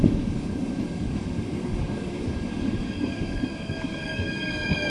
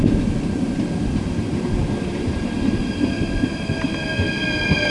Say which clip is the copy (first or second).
first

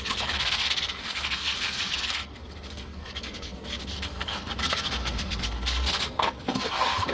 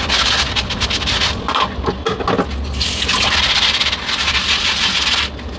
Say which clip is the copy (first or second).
first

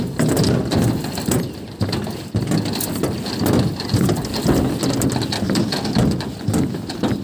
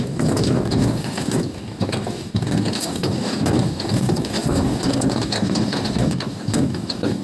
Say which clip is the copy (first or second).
second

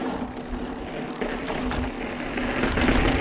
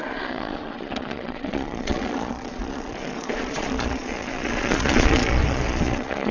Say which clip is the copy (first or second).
second